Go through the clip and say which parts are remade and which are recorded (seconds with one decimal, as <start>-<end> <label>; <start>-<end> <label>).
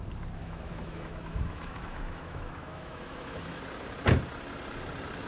0.0-0.4 recorded; 0.4-3.6 remade; 3.6-5.3 recorded